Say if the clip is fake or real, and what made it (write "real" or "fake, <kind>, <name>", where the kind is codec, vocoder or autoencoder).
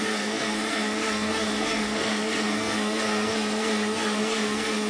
fake, codec, SNAC